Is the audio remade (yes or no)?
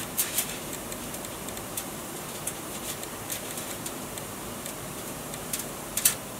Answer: yes